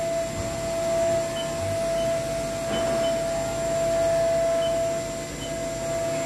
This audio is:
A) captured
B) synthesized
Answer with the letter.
A